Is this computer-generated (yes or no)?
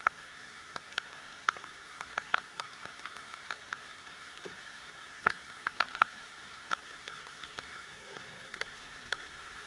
yes